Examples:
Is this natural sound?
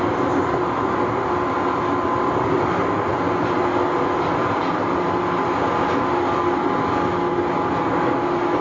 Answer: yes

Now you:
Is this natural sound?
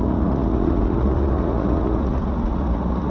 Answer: no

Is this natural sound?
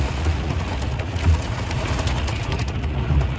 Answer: no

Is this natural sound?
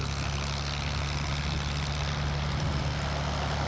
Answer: yes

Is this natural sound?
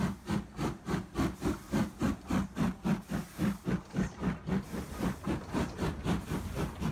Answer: yes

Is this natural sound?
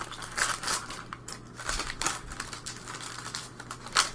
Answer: yes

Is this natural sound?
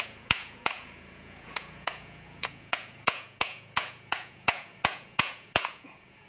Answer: no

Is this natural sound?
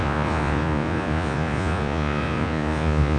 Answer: no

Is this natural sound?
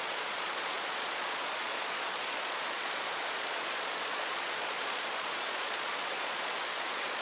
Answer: no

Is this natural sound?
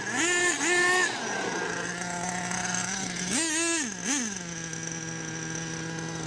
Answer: yes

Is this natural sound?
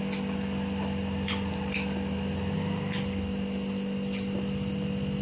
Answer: yes